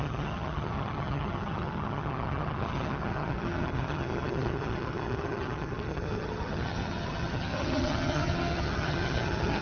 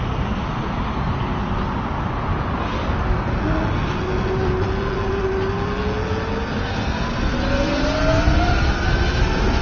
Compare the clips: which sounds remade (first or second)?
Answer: first